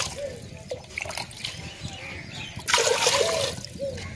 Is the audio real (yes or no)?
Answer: yes